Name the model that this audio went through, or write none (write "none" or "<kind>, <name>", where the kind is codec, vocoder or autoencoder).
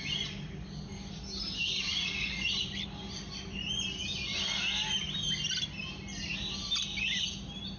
none